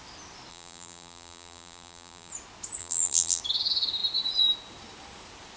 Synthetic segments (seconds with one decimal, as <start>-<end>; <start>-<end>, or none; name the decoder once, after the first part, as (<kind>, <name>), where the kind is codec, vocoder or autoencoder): 0.5-2.3 (vocoder, BigVGAN v2); 2.8-3.4